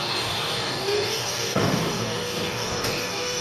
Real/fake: fake